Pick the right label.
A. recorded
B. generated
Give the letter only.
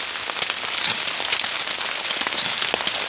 A